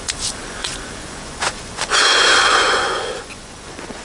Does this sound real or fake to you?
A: fake